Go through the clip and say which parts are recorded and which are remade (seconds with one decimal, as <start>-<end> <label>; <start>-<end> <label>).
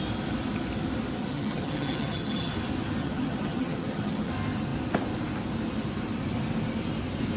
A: 0.0-1.2 recorded; 1.2-2.5 remade; 2.5-3.0 recorded; 3.0-4.3 remade; 4.3-7.4 recorded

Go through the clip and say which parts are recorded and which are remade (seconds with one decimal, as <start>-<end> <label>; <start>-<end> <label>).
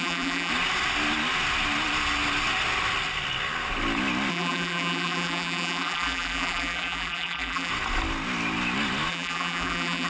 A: 0.0-0.5 remade; 0.5-4.3 recorded; 4.3-7.7 remade; 7.7-9.1 recorded; 9.1-10.1 remade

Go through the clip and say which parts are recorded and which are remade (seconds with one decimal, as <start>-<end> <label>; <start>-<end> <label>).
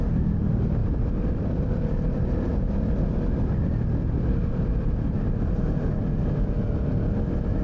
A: 0.0-0.8 recorded; 0.8-3.6 remade; 3.6-7.6 recorded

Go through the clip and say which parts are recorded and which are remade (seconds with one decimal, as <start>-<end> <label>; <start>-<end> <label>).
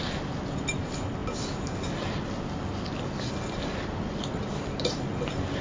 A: 0.0-5.6 recorded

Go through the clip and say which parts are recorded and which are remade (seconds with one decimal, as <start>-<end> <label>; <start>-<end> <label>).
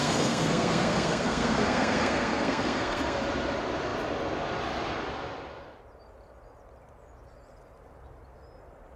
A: 0.0-3.2 remade; 3.2-9.0 recorded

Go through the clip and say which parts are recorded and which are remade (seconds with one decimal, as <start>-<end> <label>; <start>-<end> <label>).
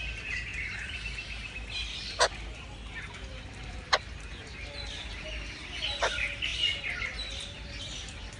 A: 0.0-8.4 recorded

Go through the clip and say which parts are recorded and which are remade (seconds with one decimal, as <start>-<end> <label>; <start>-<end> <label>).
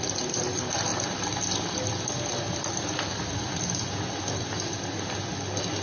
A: 0.0-5.8 recorded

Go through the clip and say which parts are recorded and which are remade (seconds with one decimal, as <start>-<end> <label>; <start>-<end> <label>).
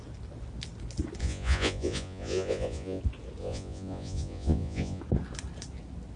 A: 0.0-1.2 recorded; 1.2-3.0 remade; 3.0-3.4 recorded; 3.4-5.0 remade; 5.0-6.2 recorded